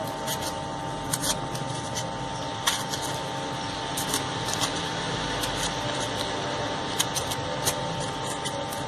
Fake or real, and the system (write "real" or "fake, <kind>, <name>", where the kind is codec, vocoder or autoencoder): real